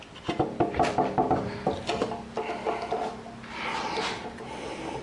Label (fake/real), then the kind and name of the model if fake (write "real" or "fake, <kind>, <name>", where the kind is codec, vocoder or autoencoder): real